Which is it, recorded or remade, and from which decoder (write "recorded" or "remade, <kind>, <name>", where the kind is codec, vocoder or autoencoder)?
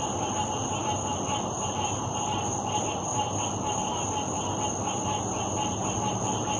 recorded